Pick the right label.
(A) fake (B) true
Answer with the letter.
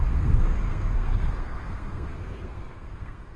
A